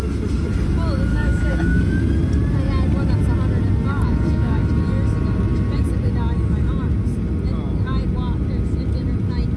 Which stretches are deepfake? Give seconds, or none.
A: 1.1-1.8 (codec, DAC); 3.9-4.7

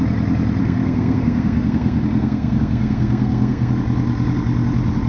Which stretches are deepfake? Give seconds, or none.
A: 0.6-3.7 (codec, SNAC)

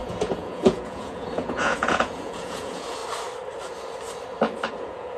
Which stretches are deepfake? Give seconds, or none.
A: 0.0-3.0 (vocoder, Vocos); 4.7-5.2